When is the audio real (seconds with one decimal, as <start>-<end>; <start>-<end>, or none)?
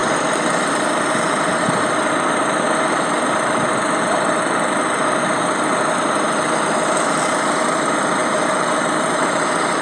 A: 0.0-8.2; 9.4-9.8